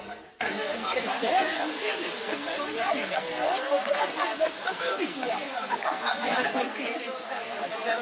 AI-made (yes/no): yes